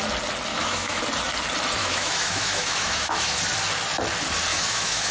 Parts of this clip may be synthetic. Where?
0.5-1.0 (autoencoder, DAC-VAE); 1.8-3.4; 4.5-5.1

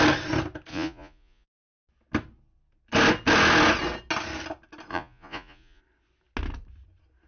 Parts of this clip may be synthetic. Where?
0.7-1.7 (vocoder, Vocos); 4.9-5.8

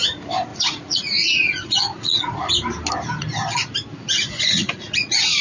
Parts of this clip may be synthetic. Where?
0.5-2.5 (vocoder, Vocos); 4.1-5.4

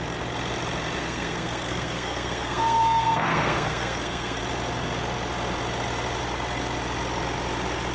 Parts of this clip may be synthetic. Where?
1.0-4.4 (codec, SNAC)

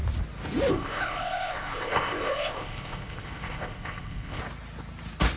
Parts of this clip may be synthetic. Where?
0.7-4.4 (codec, ZipCodec)

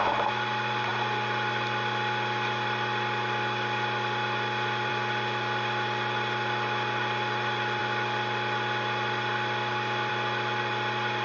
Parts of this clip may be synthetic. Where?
none